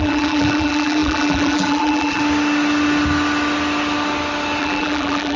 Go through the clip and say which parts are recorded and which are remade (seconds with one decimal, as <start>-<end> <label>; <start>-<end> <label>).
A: 0.0-2.2 remade; 2.2-4.6 recorded; 4.6-5.4 remade